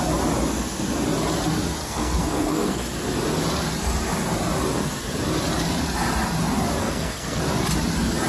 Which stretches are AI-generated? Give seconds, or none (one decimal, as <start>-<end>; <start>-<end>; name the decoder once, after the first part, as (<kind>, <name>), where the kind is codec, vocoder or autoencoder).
1.8-2.9 (codec, SNAC); 6.8-7.4